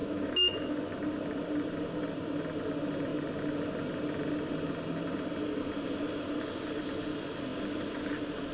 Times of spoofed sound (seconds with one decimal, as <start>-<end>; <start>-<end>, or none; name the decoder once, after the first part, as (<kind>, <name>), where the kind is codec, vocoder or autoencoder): 0.0-0.9 (autoencoder, DAC-VAE)